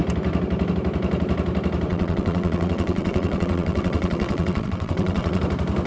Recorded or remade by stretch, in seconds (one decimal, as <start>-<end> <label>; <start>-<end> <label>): 0.0-1.9 recorded; 1.9-5.4 remade; 5.4-5.9 recorded